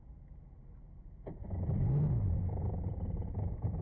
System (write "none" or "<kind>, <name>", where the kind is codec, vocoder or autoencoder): none